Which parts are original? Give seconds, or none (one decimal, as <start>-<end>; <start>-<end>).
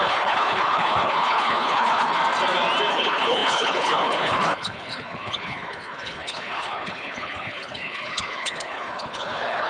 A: 2.2-2.9